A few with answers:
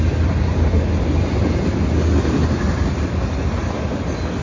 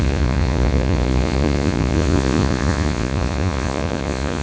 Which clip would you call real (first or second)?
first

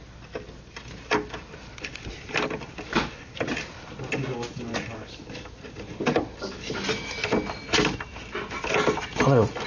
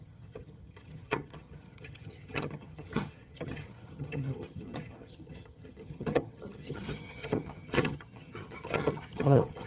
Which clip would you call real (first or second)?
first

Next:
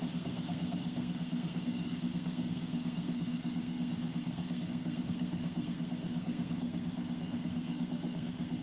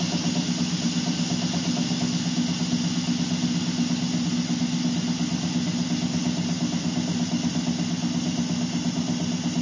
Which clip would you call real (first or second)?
second